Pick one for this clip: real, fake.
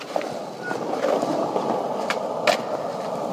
fake